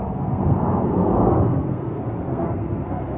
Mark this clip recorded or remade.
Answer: remade